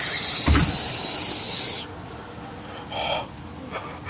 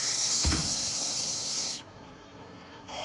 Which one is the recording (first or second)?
first